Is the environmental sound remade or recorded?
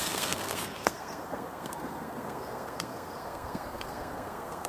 remade